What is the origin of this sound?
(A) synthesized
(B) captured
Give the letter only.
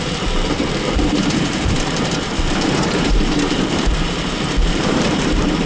A